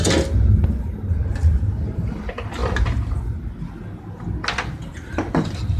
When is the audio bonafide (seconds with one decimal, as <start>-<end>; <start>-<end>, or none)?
0.0-5.8